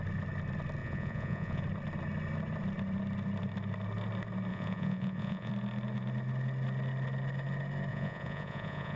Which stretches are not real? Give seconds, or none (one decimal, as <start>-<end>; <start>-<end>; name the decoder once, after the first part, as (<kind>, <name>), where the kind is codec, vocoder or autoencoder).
0.8-1.6 (vocoder, Vocos); 4.5-5.5; 7.9-9.0